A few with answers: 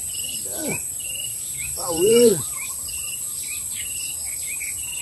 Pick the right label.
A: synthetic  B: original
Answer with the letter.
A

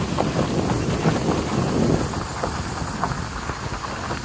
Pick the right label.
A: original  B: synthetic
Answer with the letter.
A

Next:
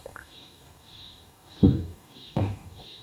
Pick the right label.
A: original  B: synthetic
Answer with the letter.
B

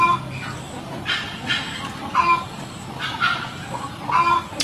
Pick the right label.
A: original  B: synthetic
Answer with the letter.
A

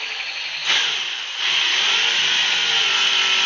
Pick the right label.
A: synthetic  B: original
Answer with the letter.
B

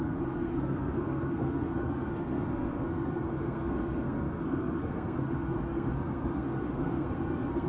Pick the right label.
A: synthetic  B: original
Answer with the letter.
A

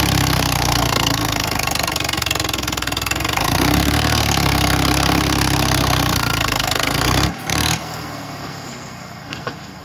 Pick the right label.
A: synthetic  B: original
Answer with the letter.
A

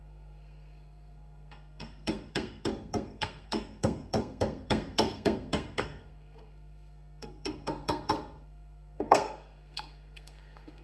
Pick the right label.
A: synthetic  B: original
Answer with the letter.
A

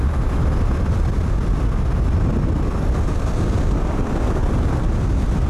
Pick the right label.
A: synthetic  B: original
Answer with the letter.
B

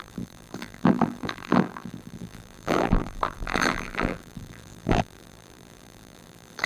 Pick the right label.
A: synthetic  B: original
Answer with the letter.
A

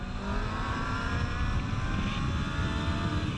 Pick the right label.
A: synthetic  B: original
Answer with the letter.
B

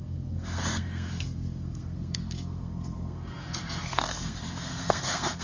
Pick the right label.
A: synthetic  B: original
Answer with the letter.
A